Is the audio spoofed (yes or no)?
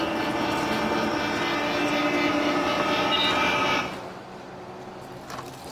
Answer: no